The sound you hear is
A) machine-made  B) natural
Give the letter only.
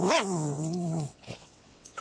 A